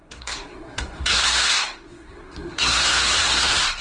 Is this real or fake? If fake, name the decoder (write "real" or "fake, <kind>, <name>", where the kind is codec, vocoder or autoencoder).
fake, codec, SNAC